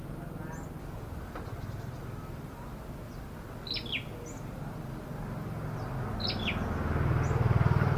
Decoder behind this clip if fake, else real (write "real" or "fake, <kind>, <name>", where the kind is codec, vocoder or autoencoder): real